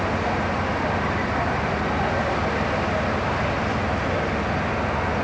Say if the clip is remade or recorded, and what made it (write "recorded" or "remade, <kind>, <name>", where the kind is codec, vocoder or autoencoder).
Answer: recorded